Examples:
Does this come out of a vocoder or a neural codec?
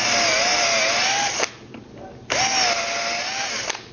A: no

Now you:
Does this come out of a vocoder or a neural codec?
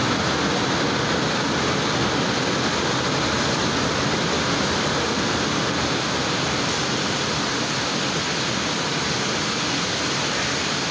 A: no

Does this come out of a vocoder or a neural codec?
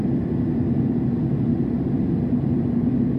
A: no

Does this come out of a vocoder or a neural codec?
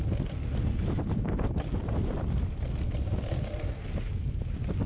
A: no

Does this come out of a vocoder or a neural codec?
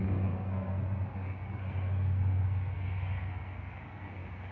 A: yes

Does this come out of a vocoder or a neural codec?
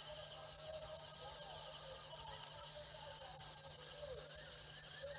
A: no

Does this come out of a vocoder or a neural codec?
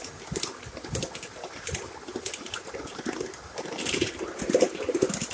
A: no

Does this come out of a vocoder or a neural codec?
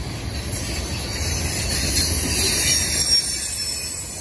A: no